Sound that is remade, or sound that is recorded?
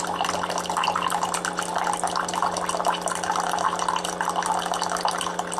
recorded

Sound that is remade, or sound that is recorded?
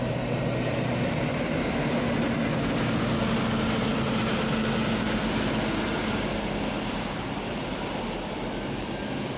recorded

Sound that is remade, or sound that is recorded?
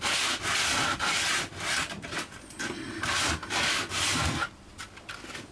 recorded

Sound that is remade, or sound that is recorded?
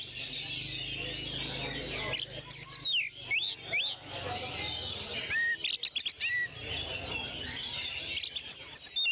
recorded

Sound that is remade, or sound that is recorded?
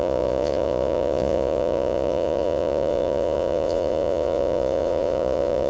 remade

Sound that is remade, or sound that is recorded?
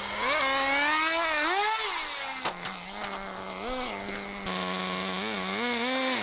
recorded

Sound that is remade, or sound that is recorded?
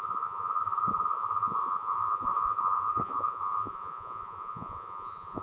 remade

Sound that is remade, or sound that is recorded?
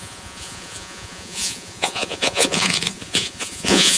remade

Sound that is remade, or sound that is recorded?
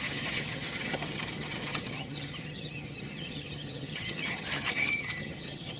remade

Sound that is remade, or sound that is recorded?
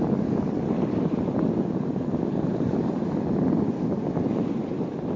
recorded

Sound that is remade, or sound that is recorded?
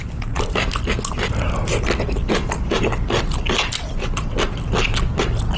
recorded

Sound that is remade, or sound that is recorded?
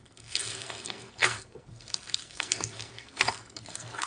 remade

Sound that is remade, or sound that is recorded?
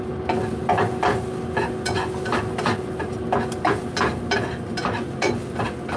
recorded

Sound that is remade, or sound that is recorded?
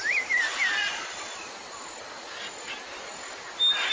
recorded